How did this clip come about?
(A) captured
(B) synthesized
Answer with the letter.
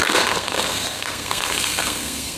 B